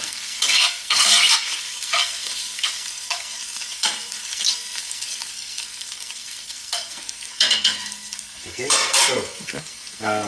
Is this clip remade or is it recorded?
remade